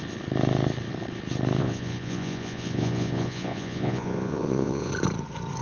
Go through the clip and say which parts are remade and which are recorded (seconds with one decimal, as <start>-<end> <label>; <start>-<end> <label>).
0.0-1.6 recorded; 1.6-4.9 remade; 4.9-5.6 recorded